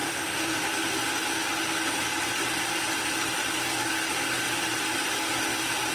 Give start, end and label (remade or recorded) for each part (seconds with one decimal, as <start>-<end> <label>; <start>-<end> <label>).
0.0-0.6 remade; 0.6-5.9 recorded